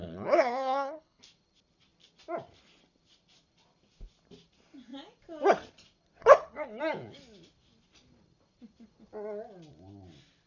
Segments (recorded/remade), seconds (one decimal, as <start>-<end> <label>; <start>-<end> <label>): 0.0-1.2 remade; 1.2-6.2 recorded; 6.2-6.8 remade; 6.8-10.5 recorded